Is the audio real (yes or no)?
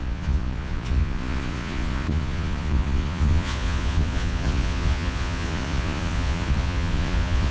no